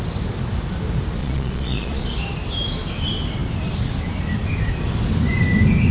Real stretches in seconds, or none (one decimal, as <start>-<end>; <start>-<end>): 0.0-1.2; 2.0-5.9